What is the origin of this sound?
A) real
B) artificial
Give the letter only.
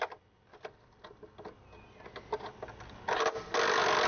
A